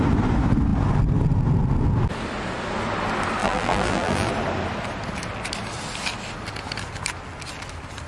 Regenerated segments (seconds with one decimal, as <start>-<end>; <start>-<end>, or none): 3.4-4.3